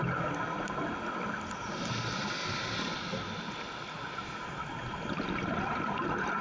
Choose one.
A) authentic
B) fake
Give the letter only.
A